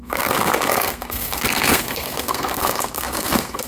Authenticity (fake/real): fake